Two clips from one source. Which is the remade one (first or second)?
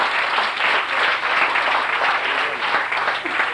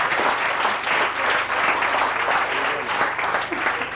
first